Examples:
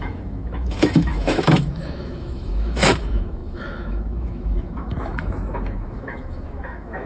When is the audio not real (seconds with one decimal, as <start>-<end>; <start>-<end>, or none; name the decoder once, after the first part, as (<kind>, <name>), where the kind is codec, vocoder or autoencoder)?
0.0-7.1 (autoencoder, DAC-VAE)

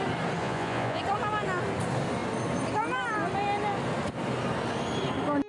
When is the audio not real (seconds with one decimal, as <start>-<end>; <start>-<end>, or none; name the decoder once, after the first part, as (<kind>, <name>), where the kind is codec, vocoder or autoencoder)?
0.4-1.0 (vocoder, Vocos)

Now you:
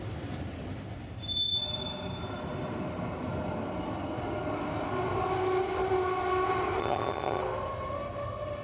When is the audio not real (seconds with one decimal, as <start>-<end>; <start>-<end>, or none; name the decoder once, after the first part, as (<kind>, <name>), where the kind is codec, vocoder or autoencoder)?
6.8-7.4 (vocoder, HiFi-GAN)

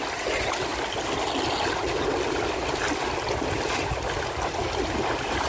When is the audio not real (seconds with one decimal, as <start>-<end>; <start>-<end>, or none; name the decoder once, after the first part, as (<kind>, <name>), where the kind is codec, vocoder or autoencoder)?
none

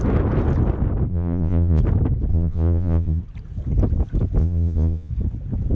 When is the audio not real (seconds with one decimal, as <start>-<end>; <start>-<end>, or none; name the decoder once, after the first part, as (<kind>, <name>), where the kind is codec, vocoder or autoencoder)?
1.1-1.8 (vocoder, Vocos); 2.3-3.2; 4.4-5.1

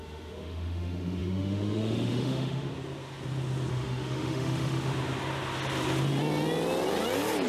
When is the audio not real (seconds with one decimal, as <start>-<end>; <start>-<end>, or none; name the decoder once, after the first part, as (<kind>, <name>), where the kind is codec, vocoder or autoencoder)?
0.0-2.7 (autoencoder, DAC-VAE); 3.7-4.9